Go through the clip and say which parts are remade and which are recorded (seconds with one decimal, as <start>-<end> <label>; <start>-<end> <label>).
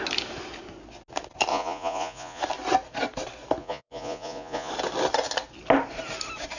0.0-1.5 recorded; 1.5-2.4 remade; 2.4-3.6 recorded; 3.6-4.7 remade; 4.7-6.6 recorded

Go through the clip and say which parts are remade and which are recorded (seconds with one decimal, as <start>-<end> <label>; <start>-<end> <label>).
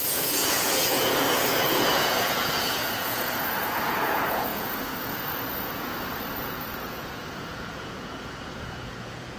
0.0-9.4 remade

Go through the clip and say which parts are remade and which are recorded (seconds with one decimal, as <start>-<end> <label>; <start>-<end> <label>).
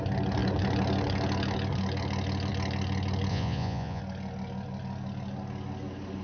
0.0-3.3 recorded; 3.3-4.0 remade; 4.0-6.2 recorded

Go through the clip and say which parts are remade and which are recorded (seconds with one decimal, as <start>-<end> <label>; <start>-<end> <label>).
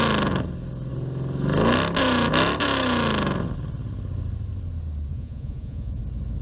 0.0-5.1 recorded; 5.1-6.0 remade; 6.0-6.4 recorded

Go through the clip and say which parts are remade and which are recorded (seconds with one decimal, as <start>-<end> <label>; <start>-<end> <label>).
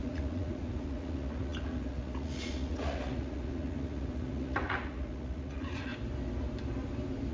0.0-5.9 remade; 5.9-7.3 recorded